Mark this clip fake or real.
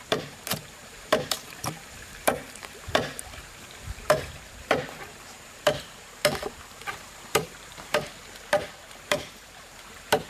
fake